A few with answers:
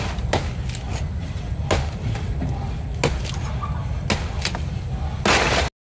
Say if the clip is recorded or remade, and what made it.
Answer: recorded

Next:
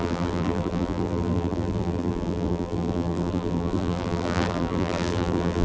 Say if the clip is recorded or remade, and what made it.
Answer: remade, vocoder, BigVGAN v2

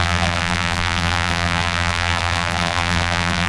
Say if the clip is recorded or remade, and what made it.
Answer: remade, vocoder, BigVGAN v2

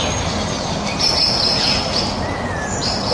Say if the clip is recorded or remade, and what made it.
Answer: recorded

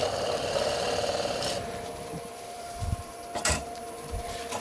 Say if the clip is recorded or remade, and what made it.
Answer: remade, vocoder, BigVGAN v2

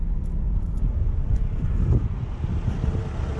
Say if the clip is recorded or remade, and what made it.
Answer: recorded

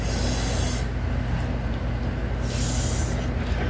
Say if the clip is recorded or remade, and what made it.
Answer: recorded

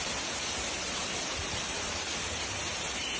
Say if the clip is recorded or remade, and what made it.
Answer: remade, vocoder, BigVGAN v2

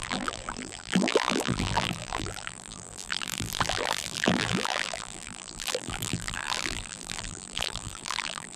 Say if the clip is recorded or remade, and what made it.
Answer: remade, vocoder, BigVGAN v2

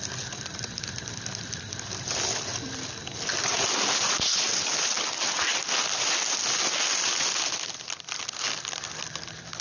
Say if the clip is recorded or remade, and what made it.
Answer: recorded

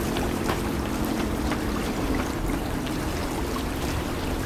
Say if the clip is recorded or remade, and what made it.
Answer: remade, vocoder, BigVGAN v2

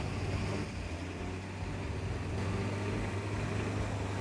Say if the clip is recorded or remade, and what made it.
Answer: recorded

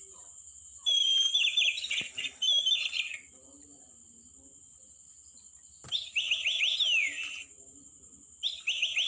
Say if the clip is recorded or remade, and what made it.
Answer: remade, vocoder, BigVGAN v2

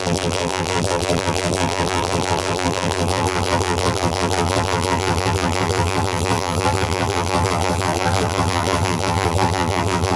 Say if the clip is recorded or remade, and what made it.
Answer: remade, vocoder, BigVGAN v2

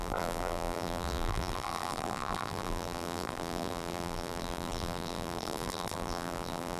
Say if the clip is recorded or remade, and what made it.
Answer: remade, vocoder, BigVGAN v2